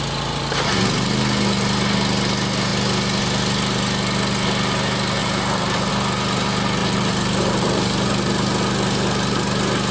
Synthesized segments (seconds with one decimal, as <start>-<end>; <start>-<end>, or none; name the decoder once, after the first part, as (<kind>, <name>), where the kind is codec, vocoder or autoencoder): 5.2-5.9 (vocoder, BigVGAN v2); 6.8-8.1